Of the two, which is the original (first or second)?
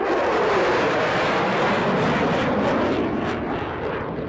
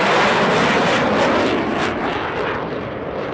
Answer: first